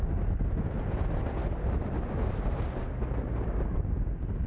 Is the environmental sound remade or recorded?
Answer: recorded